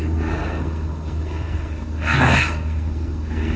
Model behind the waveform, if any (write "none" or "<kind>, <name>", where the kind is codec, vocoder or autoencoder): codec, SNAC